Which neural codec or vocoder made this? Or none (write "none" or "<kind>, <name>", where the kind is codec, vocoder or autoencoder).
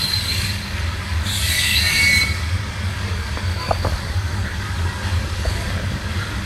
codec, DAC